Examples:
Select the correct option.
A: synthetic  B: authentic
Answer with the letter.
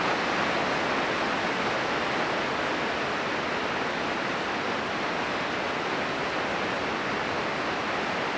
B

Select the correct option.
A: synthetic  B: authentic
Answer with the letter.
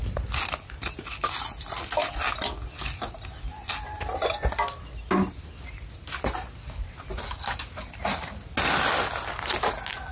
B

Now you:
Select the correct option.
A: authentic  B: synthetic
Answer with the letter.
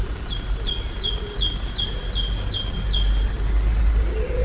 A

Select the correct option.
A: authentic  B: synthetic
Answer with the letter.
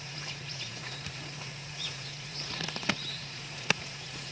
B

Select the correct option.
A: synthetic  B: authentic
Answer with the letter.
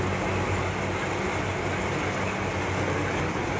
B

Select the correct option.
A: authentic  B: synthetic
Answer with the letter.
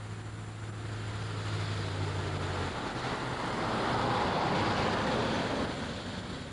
A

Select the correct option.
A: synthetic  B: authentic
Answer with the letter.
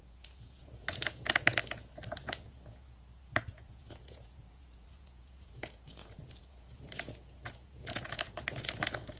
A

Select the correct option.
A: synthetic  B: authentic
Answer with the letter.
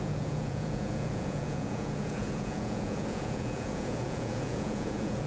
A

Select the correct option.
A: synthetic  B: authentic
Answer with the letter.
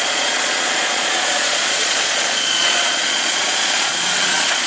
A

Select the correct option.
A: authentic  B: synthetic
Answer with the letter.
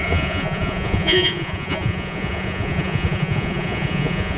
B